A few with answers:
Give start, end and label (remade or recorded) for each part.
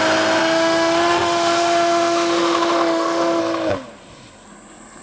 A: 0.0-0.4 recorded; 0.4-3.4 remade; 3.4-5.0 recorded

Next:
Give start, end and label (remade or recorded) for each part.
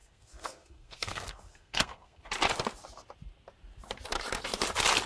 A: 0.0-2.2 remade; 2.2-5.1 recorded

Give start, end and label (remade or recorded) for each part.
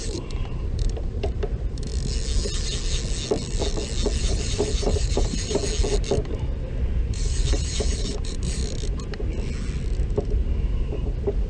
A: 0.0-1.9 remade; 1.9-4.2 recorded; 4.2-5.6 remade; 5.6-6.9 recorded; 6.9-8.6 remade; 8.6-10.3 recorded; 10.3-11.5 remade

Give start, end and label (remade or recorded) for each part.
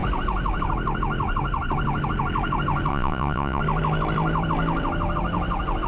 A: 0.0-2.9 recorded; 2.9-3.6 remade; 3.6-5.9 recorded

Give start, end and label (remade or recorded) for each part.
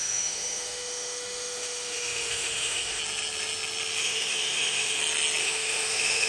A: 0.0-3.0 remade; 3.0-4.0 recorded; 4.0-5.0 remade; 5.0-5.4 recorded; 5.4-6.3 remade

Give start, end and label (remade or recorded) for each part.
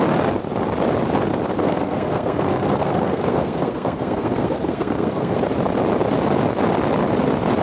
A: 0.0-1.6 recorded; 1.6-5.4 remade; 5.4-7.6 recorded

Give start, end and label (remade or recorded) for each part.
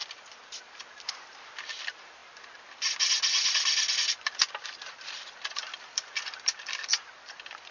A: 0.0-2.2 remade; 2.2-4.1 recorded; 4.1-7.7 remade